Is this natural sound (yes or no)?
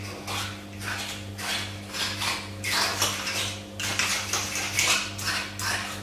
yes